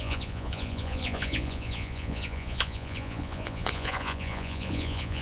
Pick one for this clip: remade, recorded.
remade